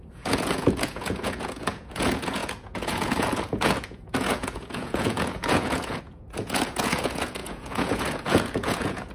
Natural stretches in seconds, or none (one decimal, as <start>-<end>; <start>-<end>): none